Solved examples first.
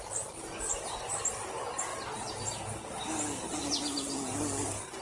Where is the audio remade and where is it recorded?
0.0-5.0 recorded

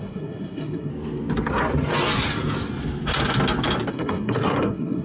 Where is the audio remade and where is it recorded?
0.0-0.9 remade; 0.9-3.9 recorded; 3.9-5.0 remade

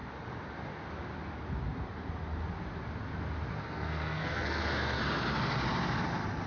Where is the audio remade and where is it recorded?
0.0-3.6 recorded; 3.6-5.0 remade; 5.0-6.5 recorded

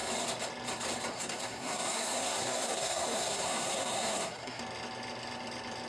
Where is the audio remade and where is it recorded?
0.0-1.1 recorded; 1.1-4.6 remade; 4.6-5.9 recorded

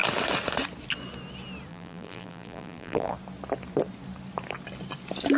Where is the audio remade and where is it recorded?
0.0-1.7 recorded; 1.7-3.1 remade; 3.1-5.4 recorded

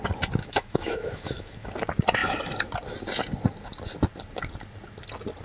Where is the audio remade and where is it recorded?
0.0-0.4 recorded; 0.4-1.7 remade; 1.7-5.4 recorded

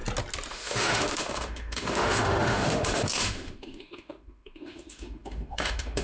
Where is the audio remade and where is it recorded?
0.0-0.5 recorded; 0.5-6.0 remade